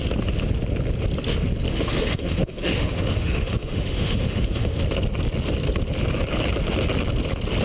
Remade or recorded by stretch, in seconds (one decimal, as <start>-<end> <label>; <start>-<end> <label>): 0.0-1.7 recorded; 1.7-4.8 remade; 4.8-7.6 recorded